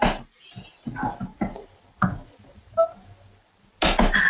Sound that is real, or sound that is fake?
real